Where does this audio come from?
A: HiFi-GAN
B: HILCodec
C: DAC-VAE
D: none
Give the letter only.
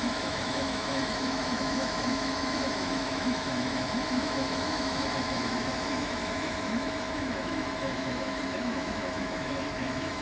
C